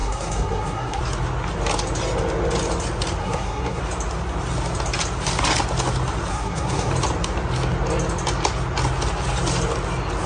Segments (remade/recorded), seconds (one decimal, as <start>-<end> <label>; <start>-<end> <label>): 0.0-1.0 remade; 1.0-3.2 recorded; 3.2-3.8 remade; 3.8-6.3 recorded; 6.3-6.9 remade; 6.9-10.3 recorded